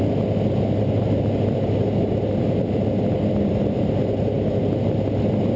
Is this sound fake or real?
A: real